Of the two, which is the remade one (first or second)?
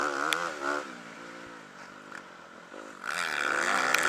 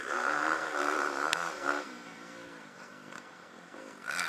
second